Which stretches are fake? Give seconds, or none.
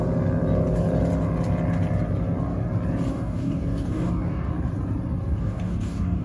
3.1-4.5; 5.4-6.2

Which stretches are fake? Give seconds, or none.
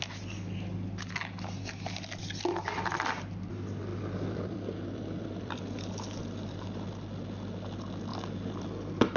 3.9-5.9; 8.1-9.2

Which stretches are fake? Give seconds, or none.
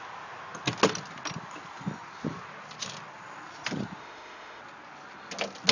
4.0-4.6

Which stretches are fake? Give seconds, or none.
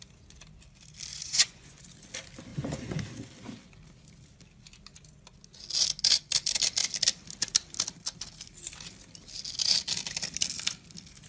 1.1-1.8; 2.5-3.0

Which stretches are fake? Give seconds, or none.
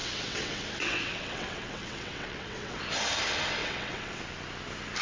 0.0-2.8; 3.6-4.2